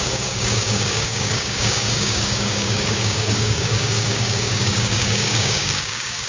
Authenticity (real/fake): fake